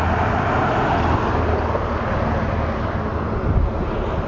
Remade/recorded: recorded